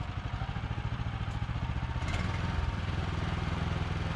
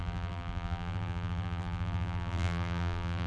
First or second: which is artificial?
second